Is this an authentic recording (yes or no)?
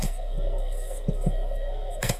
no